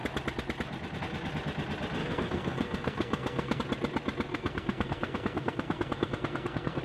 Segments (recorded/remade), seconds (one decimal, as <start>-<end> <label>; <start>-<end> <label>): 0.0-2.0 recorded; 2.0-3.6 remade; 3.6-4.3 recorded; 4.3-6.8 remade